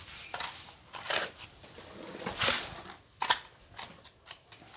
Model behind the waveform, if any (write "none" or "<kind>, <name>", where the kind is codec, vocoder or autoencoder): none